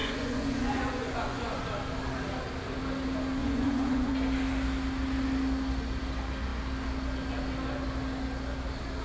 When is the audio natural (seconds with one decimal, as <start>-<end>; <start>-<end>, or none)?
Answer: 1.6-3.4; 4.1-9.0